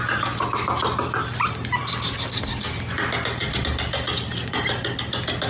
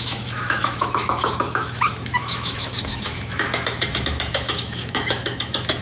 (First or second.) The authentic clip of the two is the first